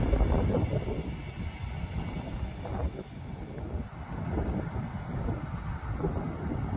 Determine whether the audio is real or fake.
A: real